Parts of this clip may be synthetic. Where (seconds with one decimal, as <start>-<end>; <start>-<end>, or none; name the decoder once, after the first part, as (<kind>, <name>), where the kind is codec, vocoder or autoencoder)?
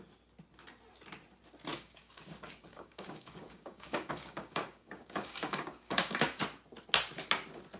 1.7-6.4 (codec, DAC)